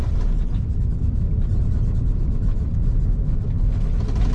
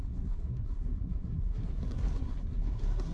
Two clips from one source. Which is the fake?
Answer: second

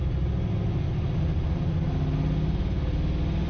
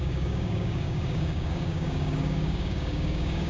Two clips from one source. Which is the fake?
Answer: second